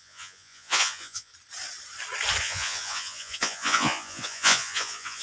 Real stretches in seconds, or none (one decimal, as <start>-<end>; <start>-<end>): 1.3-2.4